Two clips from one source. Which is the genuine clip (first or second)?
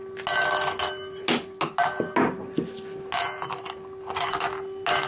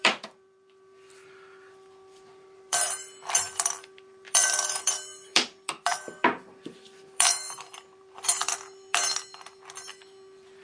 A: first